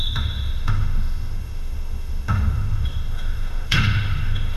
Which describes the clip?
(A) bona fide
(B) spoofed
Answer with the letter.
B